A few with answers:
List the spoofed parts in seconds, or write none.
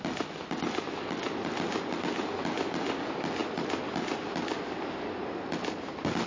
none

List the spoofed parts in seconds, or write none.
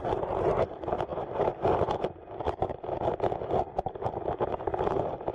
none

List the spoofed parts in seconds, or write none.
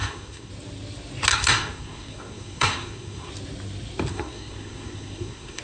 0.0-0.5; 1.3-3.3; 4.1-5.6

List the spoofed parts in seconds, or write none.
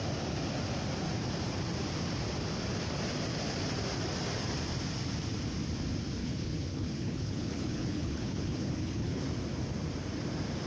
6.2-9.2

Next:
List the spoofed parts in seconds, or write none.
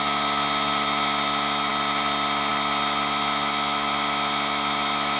none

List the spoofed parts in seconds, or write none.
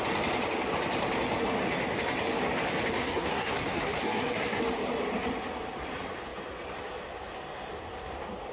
3.0-4.6